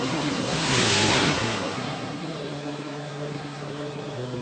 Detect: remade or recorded remade